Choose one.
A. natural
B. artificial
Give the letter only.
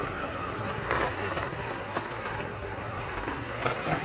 B